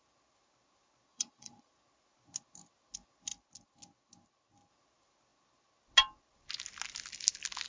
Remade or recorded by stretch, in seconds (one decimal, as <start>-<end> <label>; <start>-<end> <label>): 0.0-1.1 recorded; 1.1-1.7 remade; 1.7-7.7 recorded